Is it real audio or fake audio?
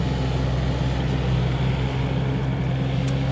real